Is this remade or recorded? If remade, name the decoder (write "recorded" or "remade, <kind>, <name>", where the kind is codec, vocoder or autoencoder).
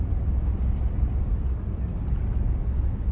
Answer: recorded